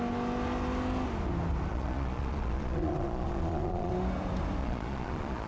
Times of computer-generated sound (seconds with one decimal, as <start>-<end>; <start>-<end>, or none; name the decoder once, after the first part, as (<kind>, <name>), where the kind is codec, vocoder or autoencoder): 1.7-3.9 (vocoder, Vocos); 4.6-5.5